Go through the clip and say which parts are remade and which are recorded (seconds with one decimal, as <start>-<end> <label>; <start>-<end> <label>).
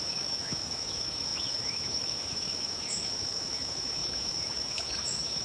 0.0-5.4 remade